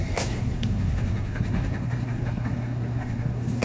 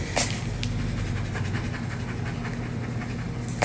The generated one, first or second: first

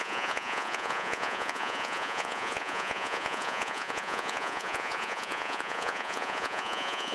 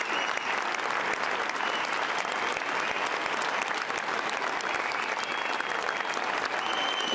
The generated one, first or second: first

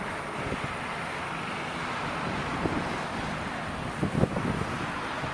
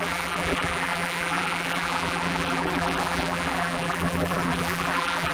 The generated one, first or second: second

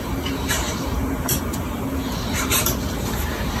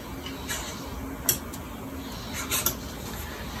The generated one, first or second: first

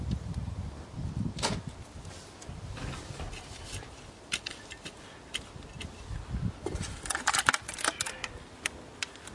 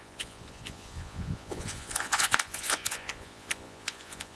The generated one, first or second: second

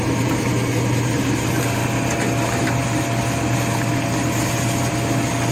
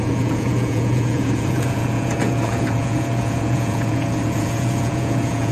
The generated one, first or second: second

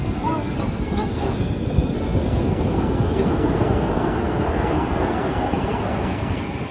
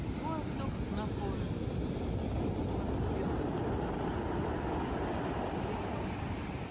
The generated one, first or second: first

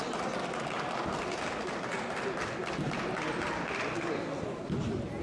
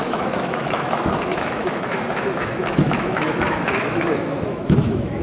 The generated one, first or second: second